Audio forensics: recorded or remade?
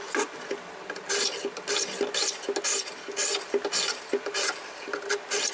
recorded